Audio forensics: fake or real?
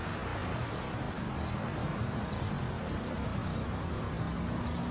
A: real